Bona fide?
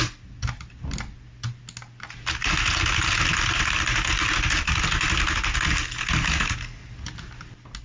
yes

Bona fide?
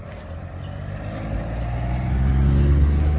yes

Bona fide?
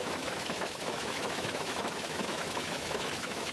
no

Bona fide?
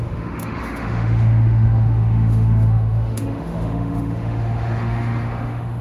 no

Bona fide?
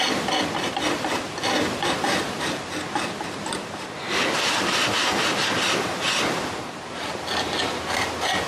yes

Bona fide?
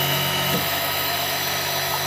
no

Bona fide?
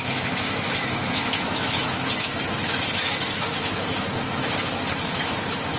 no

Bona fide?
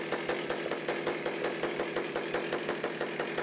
yes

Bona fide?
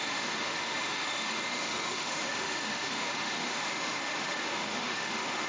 no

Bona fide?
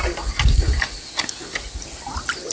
yes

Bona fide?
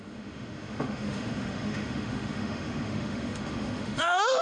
no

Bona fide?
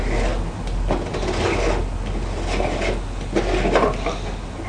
yes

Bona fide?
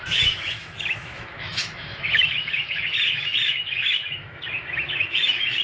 no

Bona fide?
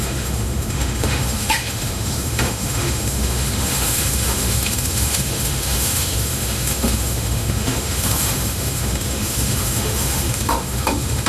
no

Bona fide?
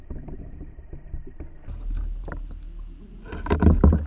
yes